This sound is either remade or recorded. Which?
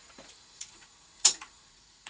remade